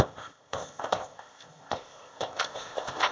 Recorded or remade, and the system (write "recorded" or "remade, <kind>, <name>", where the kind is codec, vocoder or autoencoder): remade, codec, ZipCodec